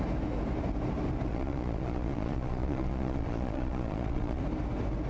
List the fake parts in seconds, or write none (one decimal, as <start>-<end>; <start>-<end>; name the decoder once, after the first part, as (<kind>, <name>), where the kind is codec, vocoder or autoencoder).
1.3-4.4 (vocoder, Vocos)